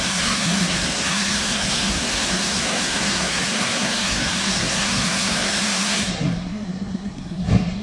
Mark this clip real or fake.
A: fake